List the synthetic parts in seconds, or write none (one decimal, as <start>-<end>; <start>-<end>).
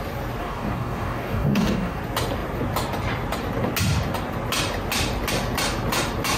0.4-2.0